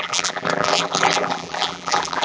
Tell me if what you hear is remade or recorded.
remade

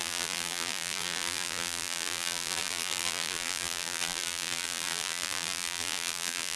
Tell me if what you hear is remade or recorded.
remade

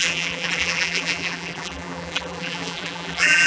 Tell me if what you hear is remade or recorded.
remade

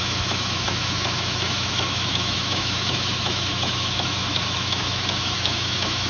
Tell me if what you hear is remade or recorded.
remade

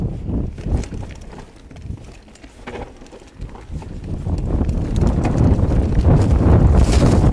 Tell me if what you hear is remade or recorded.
recorded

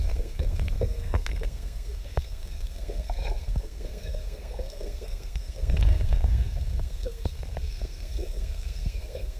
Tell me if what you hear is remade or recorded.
remade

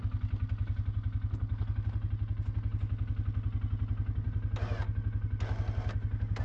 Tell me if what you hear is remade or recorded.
recorded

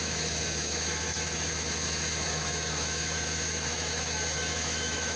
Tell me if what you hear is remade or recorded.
remade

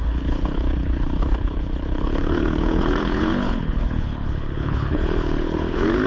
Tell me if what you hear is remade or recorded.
remade